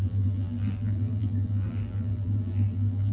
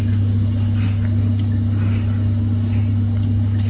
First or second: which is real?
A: second